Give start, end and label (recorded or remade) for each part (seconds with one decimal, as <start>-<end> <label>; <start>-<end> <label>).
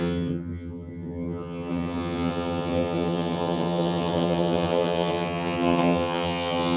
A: 0.0-6.8 remade